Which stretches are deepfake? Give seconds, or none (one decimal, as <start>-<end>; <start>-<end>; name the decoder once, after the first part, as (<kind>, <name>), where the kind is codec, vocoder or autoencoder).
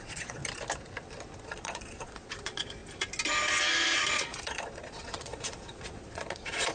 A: 0.0-0.4 (vocoder, Vocos); 1.4-2.8; 4.1-6.7